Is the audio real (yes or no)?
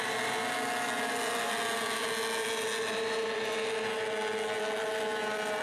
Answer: yes